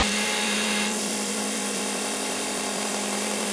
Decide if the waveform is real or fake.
fake